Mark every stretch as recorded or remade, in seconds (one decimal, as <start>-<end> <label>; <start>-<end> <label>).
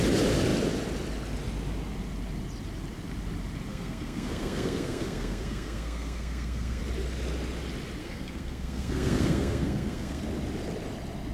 0.0-3.7 recorded; 3.7-6.8 remade; 6.8-8.0 recorded; 8.0-10.2 remade; 10.2-11.3 recorded